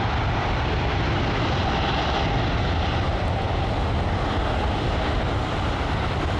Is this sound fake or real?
real